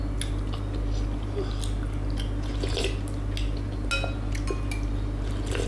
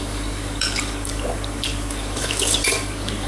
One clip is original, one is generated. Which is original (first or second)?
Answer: first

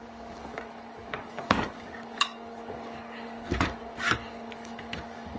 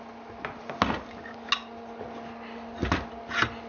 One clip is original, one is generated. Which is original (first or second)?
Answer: second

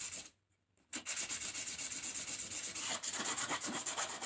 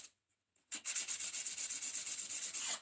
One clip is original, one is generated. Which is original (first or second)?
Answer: first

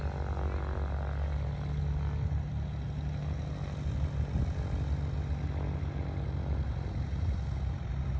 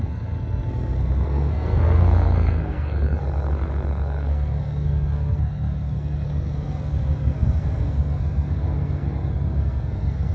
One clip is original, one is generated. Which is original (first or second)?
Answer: first